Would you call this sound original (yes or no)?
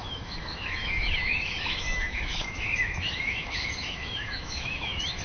no